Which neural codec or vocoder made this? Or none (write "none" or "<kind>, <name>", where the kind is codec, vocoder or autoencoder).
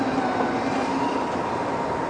none